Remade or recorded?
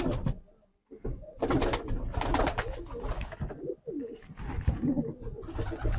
recorded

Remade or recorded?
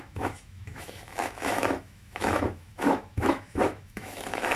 remade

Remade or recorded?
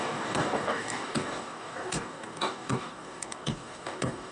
remade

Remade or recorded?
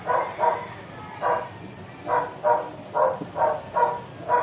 recorded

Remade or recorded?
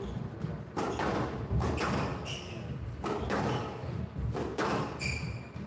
recorded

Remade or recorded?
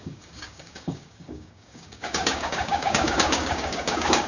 remade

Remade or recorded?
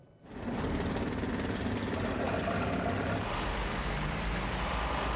recorded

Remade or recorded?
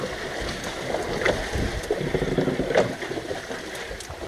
recorded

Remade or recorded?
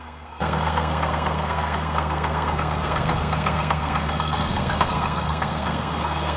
remade